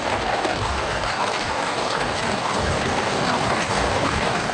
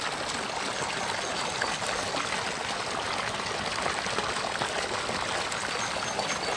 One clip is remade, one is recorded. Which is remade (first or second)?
first